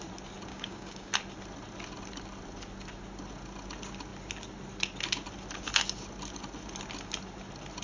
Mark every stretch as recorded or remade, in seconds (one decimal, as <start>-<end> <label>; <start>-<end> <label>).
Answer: 0.0-0.5 recorded; 0.5-1.1 remade; 1.1-7.8 recorded